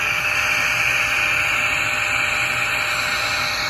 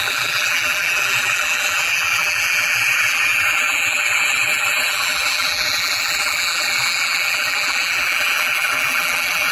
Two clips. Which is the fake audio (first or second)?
second